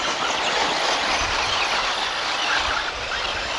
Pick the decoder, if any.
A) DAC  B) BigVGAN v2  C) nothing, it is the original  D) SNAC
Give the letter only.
C